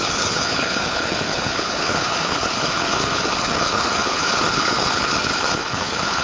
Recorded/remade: remade